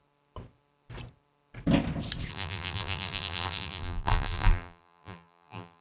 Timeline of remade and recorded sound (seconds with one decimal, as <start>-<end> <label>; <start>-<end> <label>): 0.0-2.3 recorded; 2.3-5.8 remade